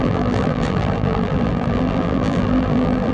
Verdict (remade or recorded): remade